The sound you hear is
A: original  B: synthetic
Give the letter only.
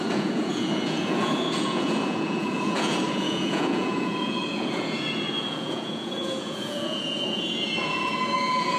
B